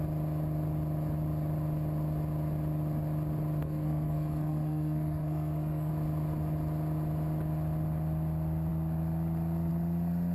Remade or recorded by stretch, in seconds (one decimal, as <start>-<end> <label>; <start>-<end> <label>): 0.0-3.6 recorded; 3.6-5.9 remade; 5.9-10.3 recorded